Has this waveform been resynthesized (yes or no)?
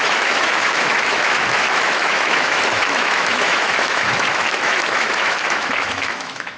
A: yes